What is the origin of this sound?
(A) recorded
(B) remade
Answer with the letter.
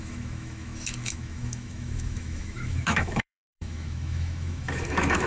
B